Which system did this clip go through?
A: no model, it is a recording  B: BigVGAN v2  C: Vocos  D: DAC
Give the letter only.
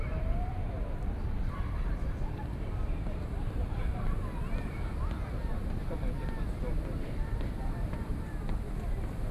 B